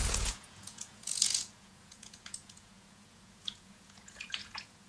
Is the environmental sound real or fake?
fake